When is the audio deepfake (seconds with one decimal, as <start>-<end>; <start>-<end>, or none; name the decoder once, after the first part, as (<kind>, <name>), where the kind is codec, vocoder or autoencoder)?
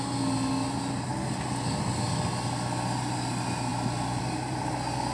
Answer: none